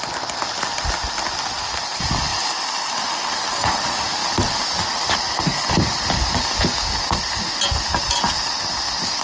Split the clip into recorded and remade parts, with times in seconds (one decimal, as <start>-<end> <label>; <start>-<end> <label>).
0.0-9.2 recorded